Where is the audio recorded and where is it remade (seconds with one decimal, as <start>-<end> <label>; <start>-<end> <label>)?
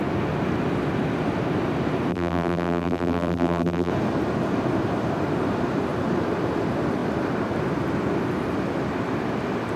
0.0-2.1 recorded; 2.1-3.9 remade; 3.9-9.8 recorded